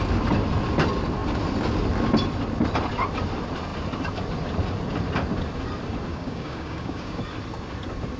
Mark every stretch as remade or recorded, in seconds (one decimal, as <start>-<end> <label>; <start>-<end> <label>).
0.0-6.1 recorded; 6.1-7.2 remade; 7.2-8.2 recorded